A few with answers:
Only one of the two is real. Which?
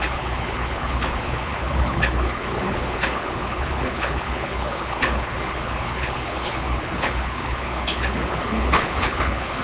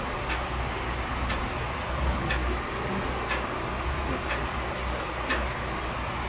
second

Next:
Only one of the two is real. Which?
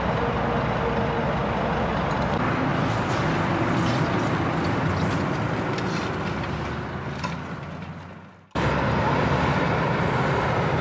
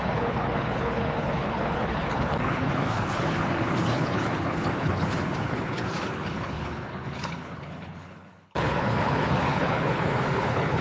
first